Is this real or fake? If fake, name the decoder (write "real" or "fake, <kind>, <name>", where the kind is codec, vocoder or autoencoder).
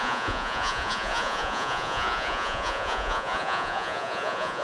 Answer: fake, vocoder, Vocos